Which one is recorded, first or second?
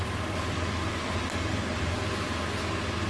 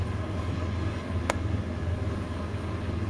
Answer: first